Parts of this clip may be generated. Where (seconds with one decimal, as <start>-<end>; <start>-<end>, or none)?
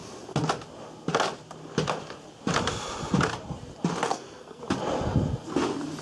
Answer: 4.1-4.6